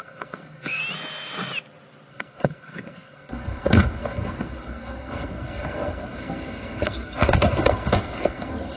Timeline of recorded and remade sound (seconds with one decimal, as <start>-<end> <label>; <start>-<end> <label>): 0.0-0.8 remade; 0.8-2.1 recorded; 2.1-8.8 remade